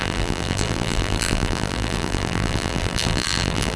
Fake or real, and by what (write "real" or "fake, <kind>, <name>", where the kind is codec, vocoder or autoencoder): fake, vocoder, BigVGAN v2